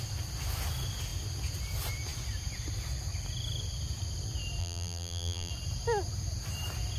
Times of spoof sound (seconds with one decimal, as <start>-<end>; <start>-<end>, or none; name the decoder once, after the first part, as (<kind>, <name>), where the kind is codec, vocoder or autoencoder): 4.6-5.5 (vocoder, BigVGAN v2)